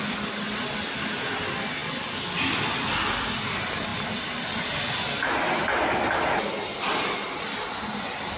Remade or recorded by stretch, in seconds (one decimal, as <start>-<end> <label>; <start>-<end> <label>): 0.0-8.4 recorded